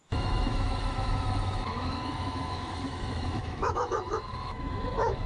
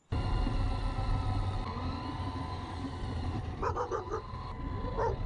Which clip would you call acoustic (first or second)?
second